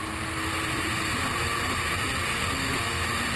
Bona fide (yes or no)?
yes